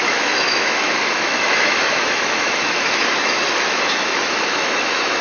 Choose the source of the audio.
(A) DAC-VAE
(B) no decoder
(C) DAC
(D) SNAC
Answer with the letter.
A